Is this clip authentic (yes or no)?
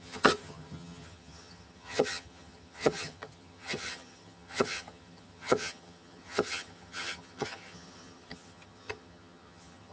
no